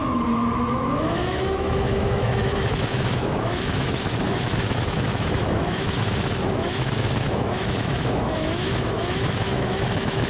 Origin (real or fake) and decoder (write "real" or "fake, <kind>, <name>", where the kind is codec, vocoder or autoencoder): fake, autoencoder, DAC-VAE